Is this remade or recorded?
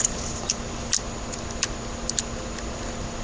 recorded